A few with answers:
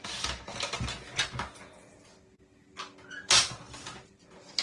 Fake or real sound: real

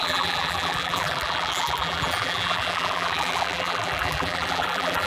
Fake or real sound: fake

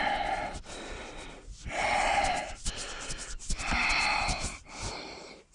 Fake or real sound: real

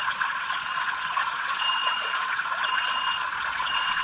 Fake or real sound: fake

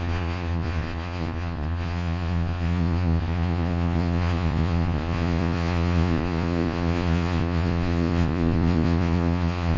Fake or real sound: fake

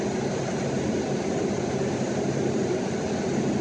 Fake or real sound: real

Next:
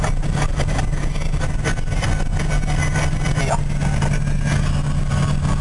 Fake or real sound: real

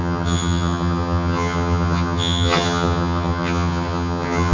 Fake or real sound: fake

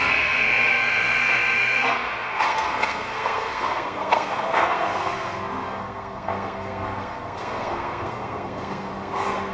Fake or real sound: fake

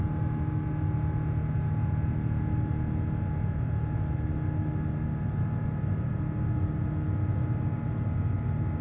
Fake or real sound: real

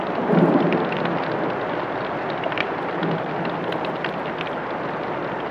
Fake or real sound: real